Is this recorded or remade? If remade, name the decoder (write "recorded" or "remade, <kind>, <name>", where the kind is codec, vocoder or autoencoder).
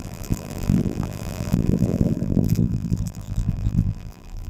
remade, vocoder, BigVGAN v2